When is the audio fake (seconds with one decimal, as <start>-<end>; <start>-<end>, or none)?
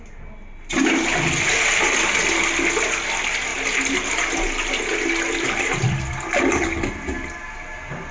none